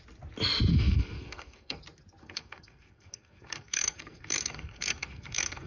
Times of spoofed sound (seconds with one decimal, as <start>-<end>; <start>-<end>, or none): 0.7-1.8; 2.2-5.7